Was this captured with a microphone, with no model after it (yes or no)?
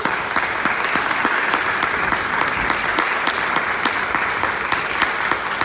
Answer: yes